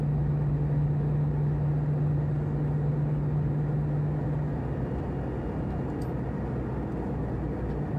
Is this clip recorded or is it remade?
recorded